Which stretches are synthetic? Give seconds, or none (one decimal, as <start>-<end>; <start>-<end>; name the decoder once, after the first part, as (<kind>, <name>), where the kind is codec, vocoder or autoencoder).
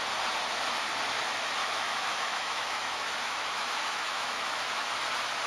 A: 1.6-4.9 (autoencoder, DAC-VAE)